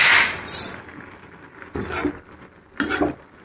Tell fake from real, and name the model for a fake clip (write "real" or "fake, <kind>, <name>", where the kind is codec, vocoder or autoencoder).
real